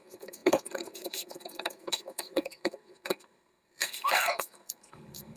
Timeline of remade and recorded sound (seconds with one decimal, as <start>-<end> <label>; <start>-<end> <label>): 0.0-5.4 remade